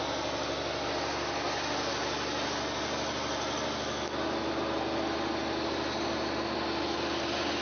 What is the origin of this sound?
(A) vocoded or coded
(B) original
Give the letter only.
B